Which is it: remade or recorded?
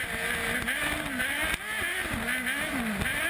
recorded